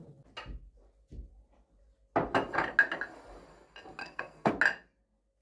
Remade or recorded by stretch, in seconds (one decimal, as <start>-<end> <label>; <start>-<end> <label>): 0.0-4.0 recorded; 4.0-4.5 remade; 4.5-5.4 recorded